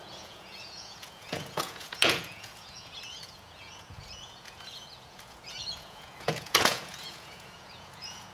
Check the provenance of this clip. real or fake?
fake